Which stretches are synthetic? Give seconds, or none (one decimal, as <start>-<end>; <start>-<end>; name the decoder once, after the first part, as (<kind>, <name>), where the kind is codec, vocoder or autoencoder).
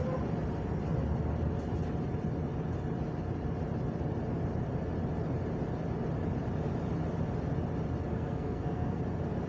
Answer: 8.1-9.0 (codec, SNAC)